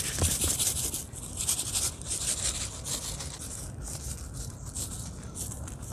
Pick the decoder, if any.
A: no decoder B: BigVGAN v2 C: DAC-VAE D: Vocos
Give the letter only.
B